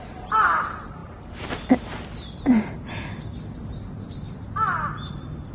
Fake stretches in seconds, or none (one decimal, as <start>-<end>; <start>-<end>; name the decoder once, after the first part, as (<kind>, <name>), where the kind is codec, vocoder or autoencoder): none